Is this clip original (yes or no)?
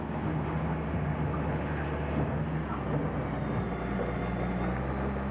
yes